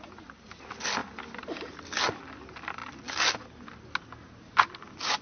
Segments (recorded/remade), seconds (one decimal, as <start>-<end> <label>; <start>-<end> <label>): 0.0-5.2 recorded

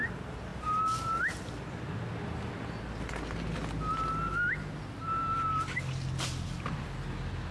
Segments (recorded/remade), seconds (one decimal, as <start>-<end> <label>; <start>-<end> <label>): 0.0-7.5 recorded

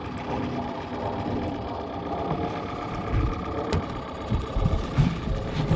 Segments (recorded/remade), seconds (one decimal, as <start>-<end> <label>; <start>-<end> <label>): 0.0-5.8 recorded

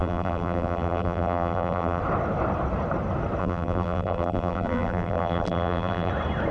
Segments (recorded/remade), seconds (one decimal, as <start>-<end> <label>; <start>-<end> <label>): 0.0-2.0 remade; 2.0-3.4 recorded; 3.4-6.1 remade; 6.1-6.5 recorded

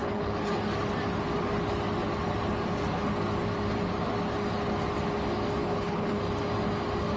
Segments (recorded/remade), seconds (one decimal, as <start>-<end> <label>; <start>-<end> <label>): 0.0-0.6 remade; 0.6-5.6 recorded; 5.6-6.2 remade; 6.2-7.2 recorded